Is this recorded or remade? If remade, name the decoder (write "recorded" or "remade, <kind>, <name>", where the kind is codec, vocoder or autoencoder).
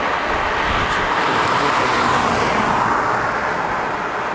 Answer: recorded